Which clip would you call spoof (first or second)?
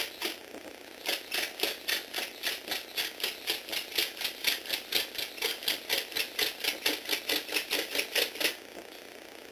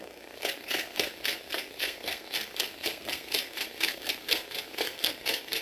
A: second